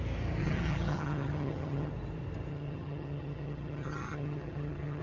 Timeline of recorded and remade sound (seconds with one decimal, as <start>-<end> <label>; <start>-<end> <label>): 0.0-0.4 recorded; 0.4-1.9 remade; 1.9-2.5 recorded; 2.5-5.0 remade